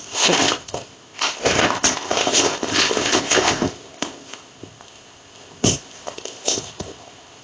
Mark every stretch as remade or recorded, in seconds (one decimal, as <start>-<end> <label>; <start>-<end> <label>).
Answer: 0.0-7.4 remade